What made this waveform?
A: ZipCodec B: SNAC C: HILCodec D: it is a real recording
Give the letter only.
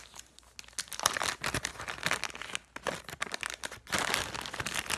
D